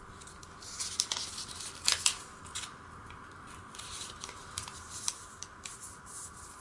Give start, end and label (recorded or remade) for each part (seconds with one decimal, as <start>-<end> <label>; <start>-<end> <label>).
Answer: 0.0-6.6 recorded